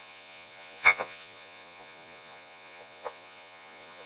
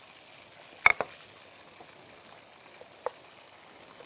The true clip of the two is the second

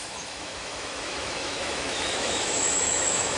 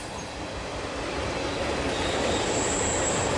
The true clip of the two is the second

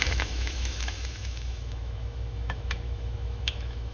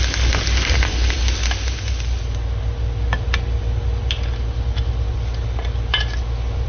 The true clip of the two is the second